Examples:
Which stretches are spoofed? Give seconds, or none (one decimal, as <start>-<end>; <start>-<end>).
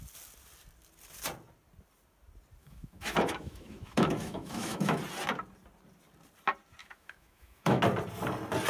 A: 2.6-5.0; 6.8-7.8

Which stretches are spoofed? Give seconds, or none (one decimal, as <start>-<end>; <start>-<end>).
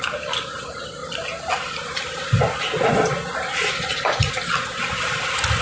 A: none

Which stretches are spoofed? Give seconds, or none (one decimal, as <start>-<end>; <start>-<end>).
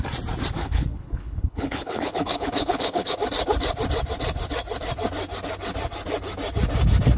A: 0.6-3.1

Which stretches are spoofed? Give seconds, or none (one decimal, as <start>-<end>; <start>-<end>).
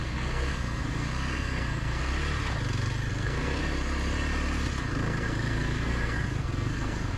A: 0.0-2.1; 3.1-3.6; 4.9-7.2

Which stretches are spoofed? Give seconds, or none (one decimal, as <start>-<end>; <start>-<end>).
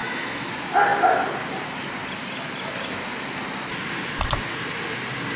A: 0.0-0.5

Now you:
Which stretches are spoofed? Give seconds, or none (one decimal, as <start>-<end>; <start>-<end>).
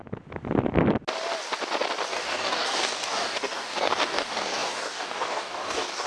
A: 2.1-6.1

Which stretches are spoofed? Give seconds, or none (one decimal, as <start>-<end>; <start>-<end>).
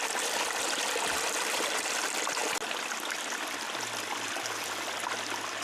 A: none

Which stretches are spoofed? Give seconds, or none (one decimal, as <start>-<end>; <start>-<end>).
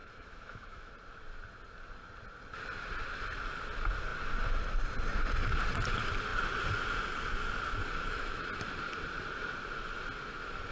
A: 0.0-0.9; 8.0-8.5